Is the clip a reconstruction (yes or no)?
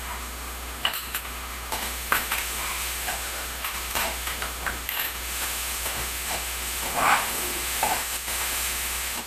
yes